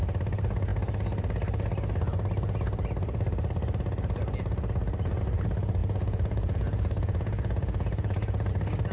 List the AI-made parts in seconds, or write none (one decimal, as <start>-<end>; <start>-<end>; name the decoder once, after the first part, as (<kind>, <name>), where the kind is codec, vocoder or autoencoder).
5.8-8.5 (vocoder, Vocos)